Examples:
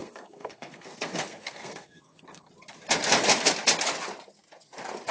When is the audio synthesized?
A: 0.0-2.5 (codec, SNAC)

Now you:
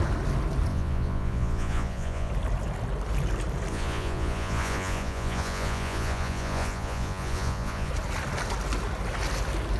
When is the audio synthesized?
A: 0.7-2.3 (vocoder, Vocos); 3.7-7.9

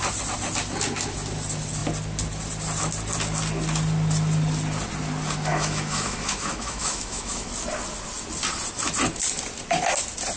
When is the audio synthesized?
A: 5.5-7.5 (autoencoder, DAC-VAE)

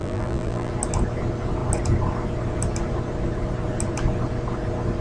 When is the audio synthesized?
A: 0.0-0.7 (vocoder, BigVGAN v2)

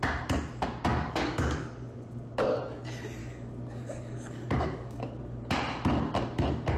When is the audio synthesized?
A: 0.9-2.6 (codec, DAC); 3.2-5.2

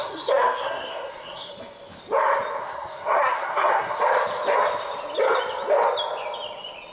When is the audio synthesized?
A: 0.0-1.5 (codec, SNAC); 2.6-4.0